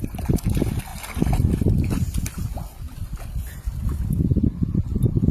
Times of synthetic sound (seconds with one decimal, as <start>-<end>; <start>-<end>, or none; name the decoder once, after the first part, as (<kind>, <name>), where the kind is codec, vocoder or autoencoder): 0.9-4.1 (vocoder, BigVGAN v2)